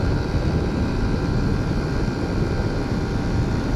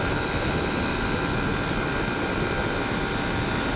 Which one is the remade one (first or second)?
first